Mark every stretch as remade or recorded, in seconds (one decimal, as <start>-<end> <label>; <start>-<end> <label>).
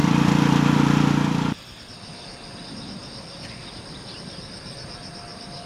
0.0-1.8 remade; 1.8-3.0 recorded; 3.0-5.1 remade; 5.1-5.7 recorded